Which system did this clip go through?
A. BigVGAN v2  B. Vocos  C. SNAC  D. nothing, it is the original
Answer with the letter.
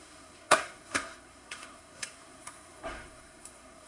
C